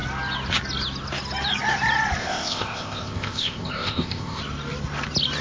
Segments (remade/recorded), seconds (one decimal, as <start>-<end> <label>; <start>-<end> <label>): 0.0-2.2 recorded; 2.2-4.4 remade; 4.4-5.4 recorded